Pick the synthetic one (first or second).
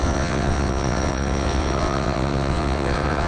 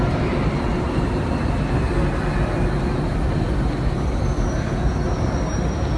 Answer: first